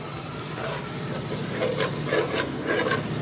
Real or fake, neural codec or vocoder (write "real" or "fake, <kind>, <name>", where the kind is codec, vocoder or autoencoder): real